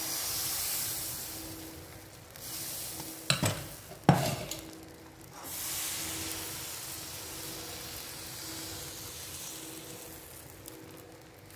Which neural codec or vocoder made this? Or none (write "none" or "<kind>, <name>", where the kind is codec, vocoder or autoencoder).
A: none